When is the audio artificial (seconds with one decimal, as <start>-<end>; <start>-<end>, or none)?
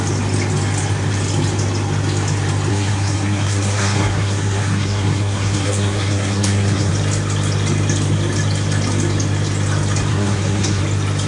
2.7-6.9; 10.1-10.8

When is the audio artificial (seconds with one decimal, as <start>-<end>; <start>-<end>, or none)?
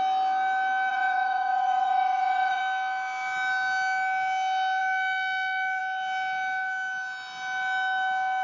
0.9-2.6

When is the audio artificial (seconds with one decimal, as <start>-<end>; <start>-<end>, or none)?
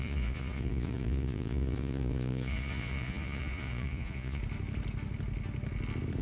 0.0-4.4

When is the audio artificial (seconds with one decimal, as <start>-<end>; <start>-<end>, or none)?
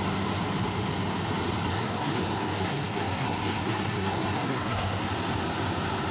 1.7-5.1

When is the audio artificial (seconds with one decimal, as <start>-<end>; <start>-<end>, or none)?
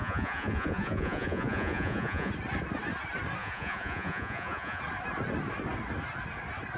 0.0-2.3; 3.4-4.8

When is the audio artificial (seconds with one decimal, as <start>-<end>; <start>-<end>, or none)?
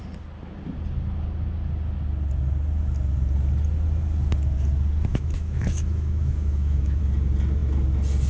5.1-7.0